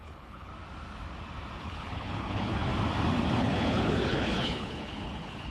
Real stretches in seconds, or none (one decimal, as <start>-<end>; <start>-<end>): 0.5-1.6; 2.7-3.4